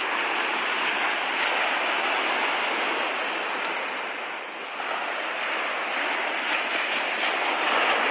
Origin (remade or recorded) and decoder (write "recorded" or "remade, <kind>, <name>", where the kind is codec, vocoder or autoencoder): recorded